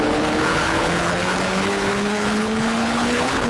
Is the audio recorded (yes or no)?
no